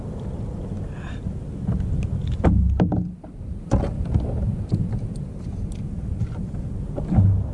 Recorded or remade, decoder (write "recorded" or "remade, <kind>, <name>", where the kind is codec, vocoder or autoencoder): recorded